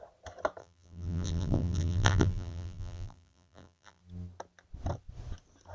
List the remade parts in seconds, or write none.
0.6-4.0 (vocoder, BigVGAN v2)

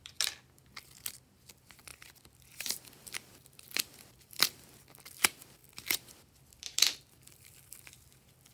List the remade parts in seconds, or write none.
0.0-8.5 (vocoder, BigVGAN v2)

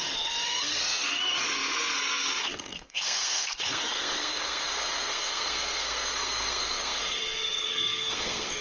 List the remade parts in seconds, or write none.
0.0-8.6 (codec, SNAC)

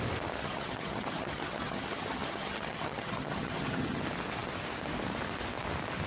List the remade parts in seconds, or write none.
0.4-4.0 (vocoder, HiFi-GAN)

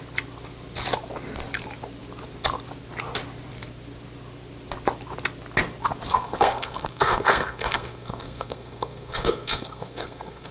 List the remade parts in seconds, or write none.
6.1-10.5 (codec, SNAC)

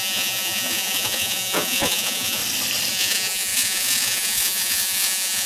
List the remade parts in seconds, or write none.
0.0-2.4 (vocoder, Vocos); 2.9-5.5

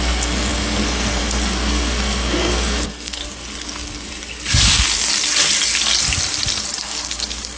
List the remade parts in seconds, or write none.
0.0-3.2 (codec, SNAC); 6.8-7.6